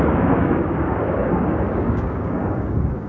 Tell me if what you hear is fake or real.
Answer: fake